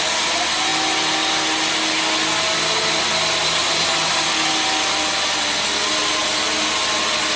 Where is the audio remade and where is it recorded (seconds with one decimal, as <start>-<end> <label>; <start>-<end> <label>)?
0.0-7.4 recorded